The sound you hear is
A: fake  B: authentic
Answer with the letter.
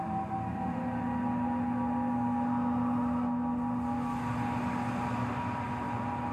B